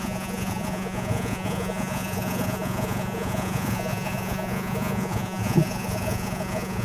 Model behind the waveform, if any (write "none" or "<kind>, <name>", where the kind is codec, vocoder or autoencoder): vocoder, Vocos